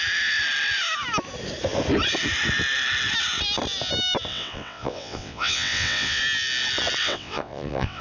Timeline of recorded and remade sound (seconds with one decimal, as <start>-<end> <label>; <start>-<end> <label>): 0.0-4.3 recorded; 4.3-6.2 remade; 6.2-7.0 recorded; 7.0-8.0 remade